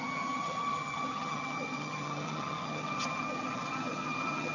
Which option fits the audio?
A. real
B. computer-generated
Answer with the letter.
B